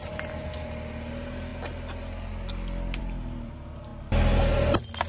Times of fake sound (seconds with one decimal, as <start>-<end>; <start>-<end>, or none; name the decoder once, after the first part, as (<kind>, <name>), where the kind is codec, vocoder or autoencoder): none